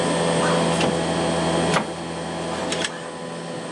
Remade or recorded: recorded